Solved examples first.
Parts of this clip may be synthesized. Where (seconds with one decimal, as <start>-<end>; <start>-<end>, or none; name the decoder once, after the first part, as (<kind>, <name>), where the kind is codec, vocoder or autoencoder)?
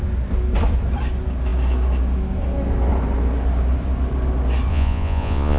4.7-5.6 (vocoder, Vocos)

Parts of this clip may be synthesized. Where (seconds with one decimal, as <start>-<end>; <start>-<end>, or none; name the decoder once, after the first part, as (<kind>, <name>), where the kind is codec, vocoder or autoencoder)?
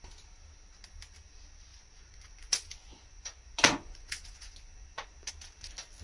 1.7-5.3 (vocoder, Vocos)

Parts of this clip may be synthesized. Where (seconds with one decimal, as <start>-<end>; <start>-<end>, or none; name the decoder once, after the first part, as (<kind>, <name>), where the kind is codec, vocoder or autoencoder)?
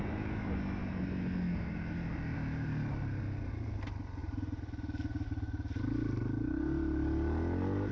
none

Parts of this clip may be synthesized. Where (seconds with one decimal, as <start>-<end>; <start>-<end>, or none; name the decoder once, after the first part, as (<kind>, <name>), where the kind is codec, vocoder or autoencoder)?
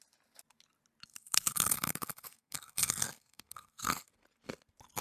1.1-4.1 (codec, SNAC)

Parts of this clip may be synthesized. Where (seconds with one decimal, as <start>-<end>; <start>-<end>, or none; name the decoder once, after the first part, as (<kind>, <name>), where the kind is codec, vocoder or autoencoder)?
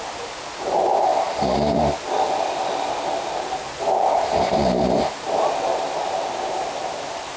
0.0-1.1 (vocoder, BigVGAN v2); 3.4-7.4